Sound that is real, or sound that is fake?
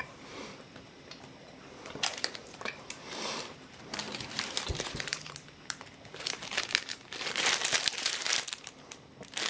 fake